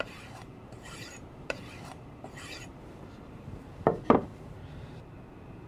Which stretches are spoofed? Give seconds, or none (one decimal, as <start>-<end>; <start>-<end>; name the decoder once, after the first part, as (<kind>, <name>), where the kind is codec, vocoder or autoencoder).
0.0-5.7 (vocoder, BigVGAN v2)

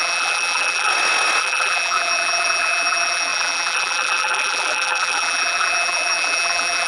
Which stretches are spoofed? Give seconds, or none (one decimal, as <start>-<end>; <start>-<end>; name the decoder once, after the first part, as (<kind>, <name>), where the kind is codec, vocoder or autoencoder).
0.0-0.9 (vocoder, BigVGAN v2); 1.4-6.9

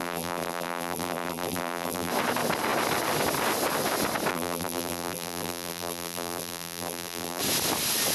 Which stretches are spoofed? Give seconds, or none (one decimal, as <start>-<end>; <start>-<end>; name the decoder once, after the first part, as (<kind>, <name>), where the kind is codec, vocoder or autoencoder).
0.0-2.1 (vocoder, BigVGAN v2); 4.3-7.4

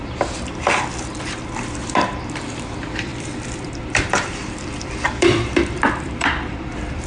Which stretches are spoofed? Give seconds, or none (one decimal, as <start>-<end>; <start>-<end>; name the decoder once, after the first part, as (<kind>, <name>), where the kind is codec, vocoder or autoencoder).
0.0-7.1 (vocoder, BigVGAN v2)

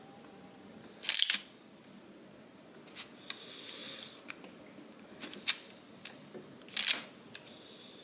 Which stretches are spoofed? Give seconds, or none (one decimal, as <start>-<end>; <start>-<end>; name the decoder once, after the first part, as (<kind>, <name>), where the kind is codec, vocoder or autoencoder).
none

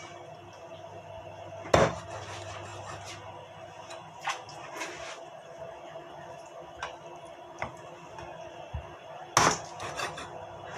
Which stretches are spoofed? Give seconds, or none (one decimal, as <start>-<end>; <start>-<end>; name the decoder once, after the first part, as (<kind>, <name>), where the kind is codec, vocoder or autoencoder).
6.0-9.2 (vocoder, BigVGAN v2)